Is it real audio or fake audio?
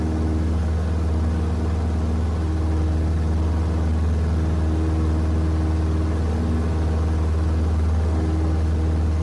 real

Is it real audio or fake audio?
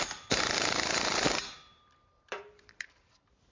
fake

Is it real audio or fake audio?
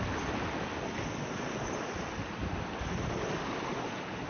real